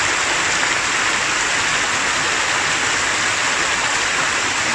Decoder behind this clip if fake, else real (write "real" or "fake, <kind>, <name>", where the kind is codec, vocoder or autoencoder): real